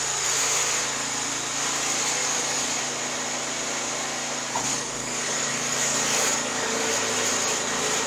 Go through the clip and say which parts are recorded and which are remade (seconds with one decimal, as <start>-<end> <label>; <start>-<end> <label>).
0.0-2.2 recorded; 2.2-2.8 remade; 2.8-4.7 recorded; 4.7-6.9 remade; 6.9-8.1 recorded